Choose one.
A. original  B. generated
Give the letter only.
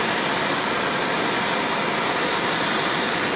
A